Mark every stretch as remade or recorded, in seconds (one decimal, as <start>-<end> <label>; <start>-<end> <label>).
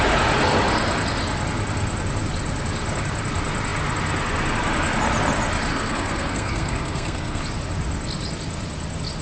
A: 0.0-5.7 recorded; 5.7-7.4 remade; 7.4-9.2 recorded